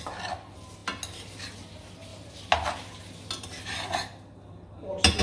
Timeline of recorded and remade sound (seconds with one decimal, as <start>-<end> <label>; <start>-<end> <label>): 0.0-5.2 recorded